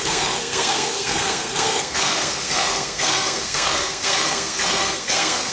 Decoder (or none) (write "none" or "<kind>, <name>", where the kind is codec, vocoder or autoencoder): codec, SNAC